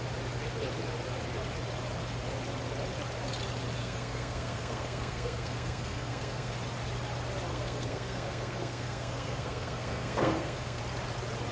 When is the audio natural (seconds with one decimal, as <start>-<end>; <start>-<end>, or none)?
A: 0.0-3.8; 6.5-7.5; 10.8-11.5